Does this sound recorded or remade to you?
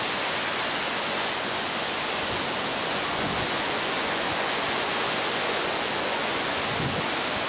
remade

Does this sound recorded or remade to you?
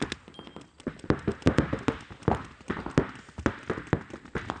recorded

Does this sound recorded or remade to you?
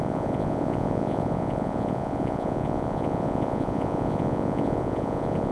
remade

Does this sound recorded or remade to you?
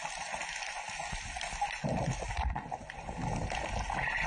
recorded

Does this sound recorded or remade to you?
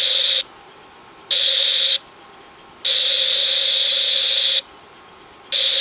recorded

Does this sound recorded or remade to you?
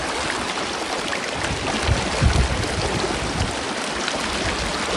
recorded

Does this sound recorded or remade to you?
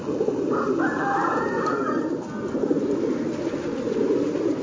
recorded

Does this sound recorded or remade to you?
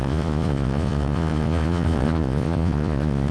remade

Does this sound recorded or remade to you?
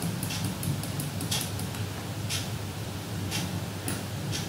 recorded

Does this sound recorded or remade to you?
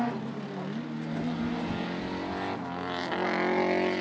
recorded